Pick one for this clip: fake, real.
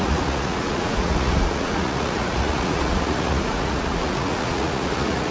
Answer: fake